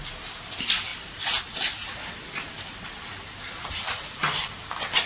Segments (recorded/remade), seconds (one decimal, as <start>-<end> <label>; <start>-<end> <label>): 0.0-5.1 recorded